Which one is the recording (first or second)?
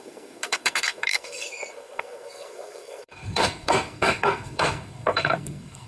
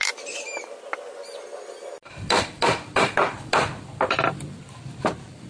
second